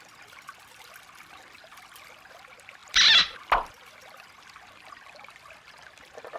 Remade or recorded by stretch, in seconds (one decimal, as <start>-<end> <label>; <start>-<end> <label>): 0.0-6.4 recorded